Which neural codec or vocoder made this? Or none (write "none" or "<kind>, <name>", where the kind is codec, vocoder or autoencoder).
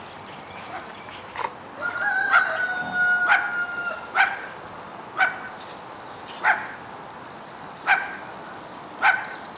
none